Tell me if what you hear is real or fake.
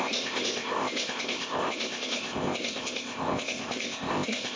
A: fake